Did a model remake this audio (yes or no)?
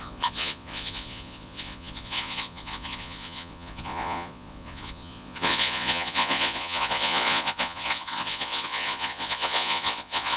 yes